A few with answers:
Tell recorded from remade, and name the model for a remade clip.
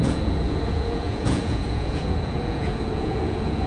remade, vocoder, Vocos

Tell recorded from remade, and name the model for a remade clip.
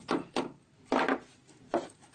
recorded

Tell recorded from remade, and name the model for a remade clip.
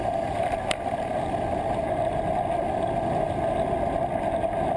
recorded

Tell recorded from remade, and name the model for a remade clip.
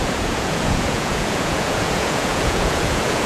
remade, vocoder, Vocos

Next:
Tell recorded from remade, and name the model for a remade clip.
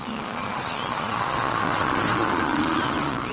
remade, vocoder, Vocos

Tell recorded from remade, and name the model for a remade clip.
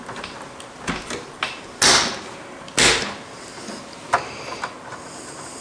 recorded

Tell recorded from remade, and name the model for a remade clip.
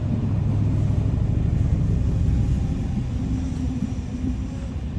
recorded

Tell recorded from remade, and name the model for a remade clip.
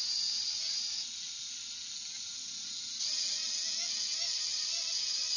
recorded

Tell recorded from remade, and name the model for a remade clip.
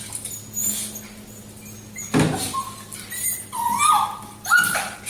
recorded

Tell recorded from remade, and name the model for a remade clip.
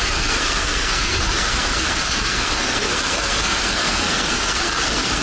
remade, codec, SNAC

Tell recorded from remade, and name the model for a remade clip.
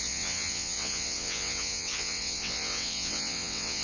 remade, vocoder, WaveNeXt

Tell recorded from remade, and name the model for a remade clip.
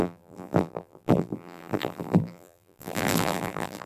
remade, vocoder, BigVGAN v2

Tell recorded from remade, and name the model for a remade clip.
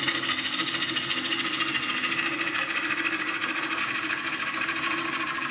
recorded